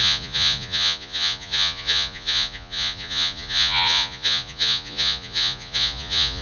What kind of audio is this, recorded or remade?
remade